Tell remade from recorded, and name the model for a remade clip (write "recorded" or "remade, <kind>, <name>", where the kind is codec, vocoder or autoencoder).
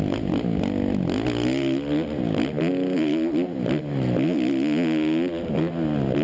recorded